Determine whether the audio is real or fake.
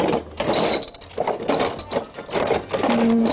real